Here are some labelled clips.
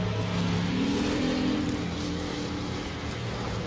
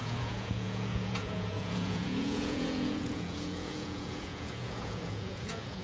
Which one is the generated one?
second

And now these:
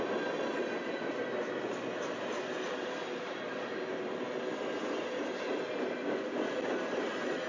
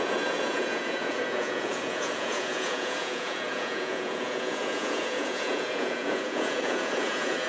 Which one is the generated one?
second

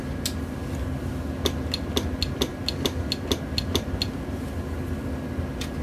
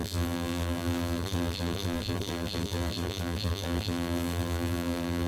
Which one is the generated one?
second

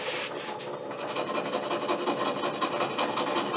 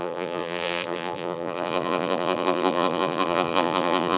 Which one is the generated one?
second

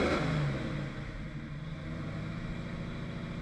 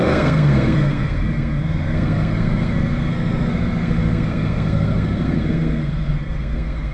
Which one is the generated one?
second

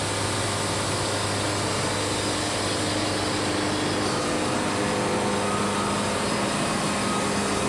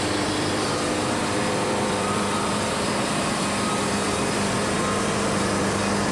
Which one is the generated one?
second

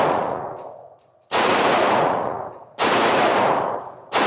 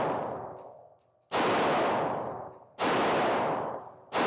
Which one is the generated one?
first